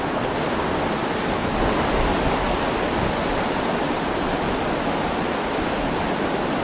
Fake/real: real